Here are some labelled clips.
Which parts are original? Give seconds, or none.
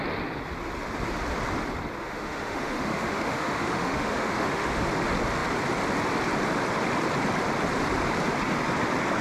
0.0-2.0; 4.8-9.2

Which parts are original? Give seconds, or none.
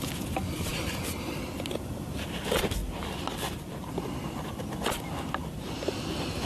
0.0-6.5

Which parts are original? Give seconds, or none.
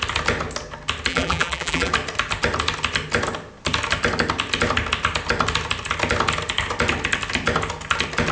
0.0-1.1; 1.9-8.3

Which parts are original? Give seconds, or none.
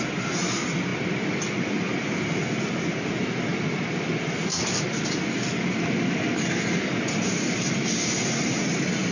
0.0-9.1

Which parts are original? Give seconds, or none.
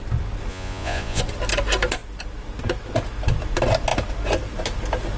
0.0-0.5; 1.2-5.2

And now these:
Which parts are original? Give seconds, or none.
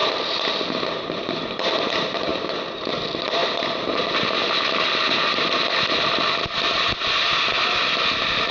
1.9-3.4; 6.4-8.5